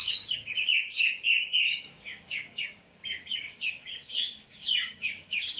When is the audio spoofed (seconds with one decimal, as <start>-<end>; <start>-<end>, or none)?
0.0-5.6